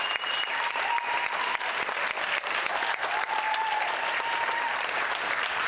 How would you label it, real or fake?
fake